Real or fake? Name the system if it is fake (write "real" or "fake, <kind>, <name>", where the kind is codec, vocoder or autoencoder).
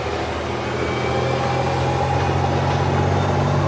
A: real